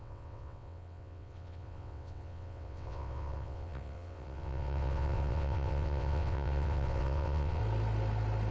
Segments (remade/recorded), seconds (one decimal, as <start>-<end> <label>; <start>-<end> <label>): 0.0-7.6 remade; 7.6-8.5 recorded